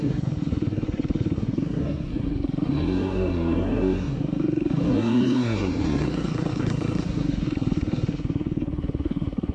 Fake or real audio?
fake